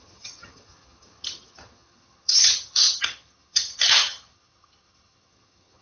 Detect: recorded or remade remade